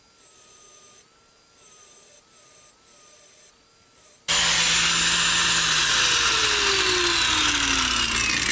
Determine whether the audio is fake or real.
real